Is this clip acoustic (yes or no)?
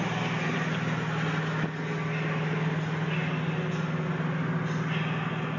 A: yes